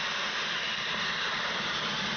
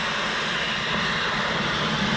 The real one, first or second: second